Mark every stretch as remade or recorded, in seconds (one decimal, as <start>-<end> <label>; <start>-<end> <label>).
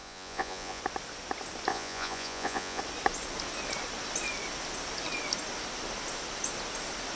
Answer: 0.0-0.8 remade; 0.8-1.7 recorded; 1.7-2.8 remade; 2.8-7.2 recorded